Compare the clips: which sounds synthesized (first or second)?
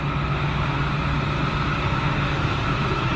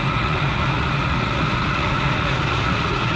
second